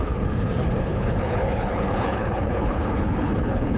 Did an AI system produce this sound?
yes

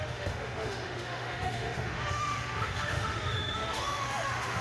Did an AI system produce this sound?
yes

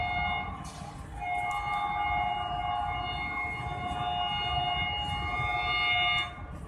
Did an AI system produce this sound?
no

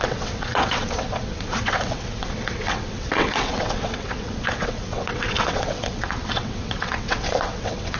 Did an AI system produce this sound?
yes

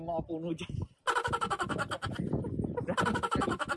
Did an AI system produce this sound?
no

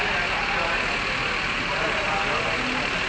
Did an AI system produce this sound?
no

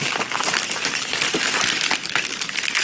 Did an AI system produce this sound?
no